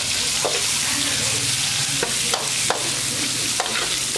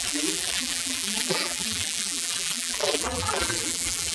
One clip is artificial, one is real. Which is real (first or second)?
first